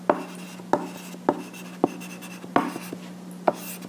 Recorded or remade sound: recorded